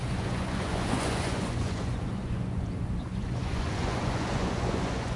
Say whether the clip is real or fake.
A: fake